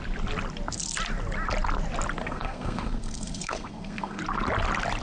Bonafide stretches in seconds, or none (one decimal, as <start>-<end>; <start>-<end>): 0.0-2.2; 4.2-5.0